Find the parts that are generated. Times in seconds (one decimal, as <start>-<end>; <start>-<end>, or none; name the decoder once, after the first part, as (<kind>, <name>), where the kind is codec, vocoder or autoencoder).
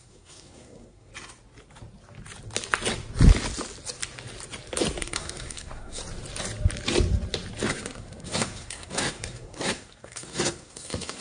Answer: 0.0-1.1 (codec, SNAC); 5.0-6.0; 7.7-11.2